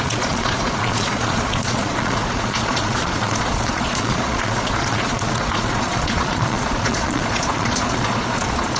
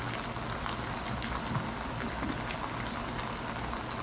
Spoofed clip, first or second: first